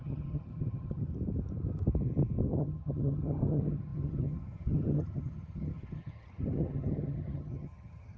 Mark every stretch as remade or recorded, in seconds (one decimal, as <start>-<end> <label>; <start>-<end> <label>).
0.0-1.1 remade; 1.1-2.4 recorded; 2.4-8.2 remade